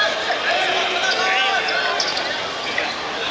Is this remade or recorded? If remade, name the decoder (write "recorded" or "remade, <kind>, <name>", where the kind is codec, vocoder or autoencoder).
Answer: recorded